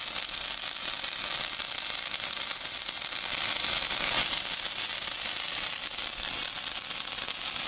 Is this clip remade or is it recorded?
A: recorded